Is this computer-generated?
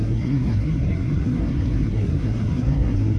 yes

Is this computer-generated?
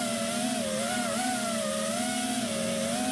no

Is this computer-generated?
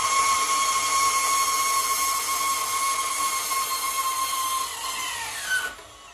no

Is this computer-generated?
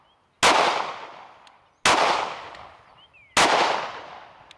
no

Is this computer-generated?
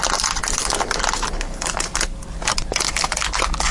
no